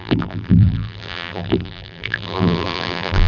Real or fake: fake